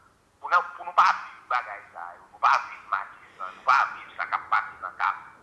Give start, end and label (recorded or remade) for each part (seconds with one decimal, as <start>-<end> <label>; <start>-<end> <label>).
0.0-5.4 recorded